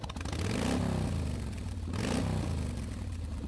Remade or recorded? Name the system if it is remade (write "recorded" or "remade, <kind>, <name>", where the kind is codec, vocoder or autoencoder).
recorded